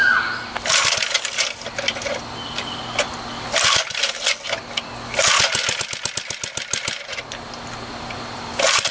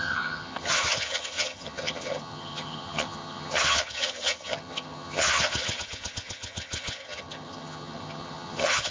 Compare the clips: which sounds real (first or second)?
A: first